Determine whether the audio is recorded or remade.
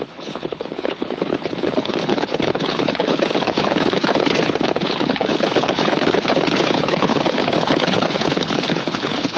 remade